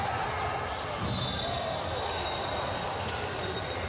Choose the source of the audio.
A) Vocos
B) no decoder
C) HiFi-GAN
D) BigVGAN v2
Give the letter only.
D